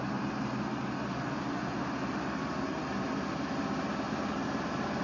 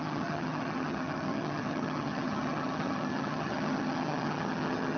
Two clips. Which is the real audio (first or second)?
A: first